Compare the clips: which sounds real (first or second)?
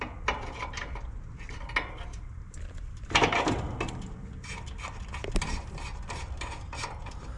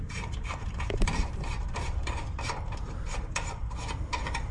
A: first